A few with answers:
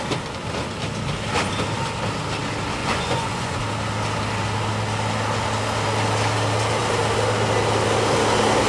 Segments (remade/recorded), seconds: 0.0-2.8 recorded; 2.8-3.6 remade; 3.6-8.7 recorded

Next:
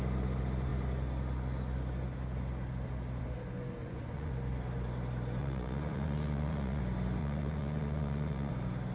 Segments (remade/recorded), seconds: 0.0-3.8 recorded; 3.8-4.3 remade; 4.3-5.4 recorded; 5.4-6.8 remade; 6.8-7.2 recorded; 7.2-8.5 remade; 8.5-8.9 recorded